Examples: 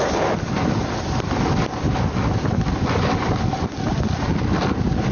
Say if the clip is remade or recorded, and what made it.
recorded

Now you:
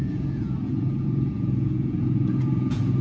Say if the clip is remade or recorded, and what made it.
remade, vocoder, Vocos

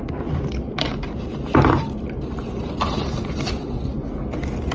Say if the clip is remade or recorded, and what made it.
recorded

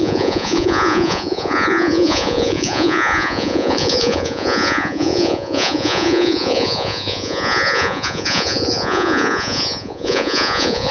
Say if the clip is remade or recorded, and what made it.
remade, vocoder, Vocos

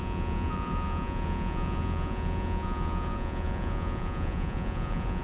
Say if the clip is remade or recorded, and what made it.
remade, vocoder, Vocos